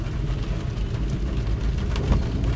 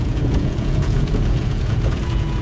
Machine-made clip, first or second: second